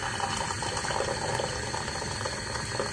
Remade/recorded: recorded